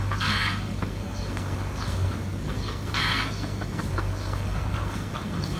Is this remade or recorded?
remade